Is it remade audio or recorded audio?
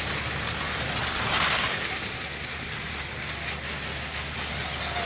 recorded